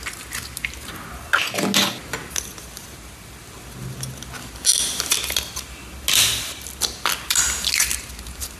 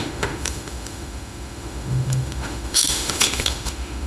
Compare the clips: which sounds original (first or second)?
first